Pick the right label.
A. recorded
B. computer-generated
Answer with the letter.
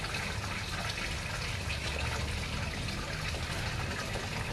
A